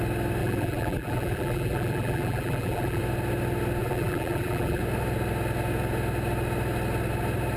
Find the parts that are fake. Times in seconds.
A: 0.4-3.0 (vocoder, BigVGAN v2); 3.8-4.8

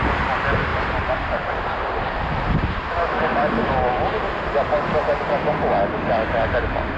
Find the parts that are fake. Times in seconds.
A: 0.7-1.5 (vocoder, BigVGAN v2)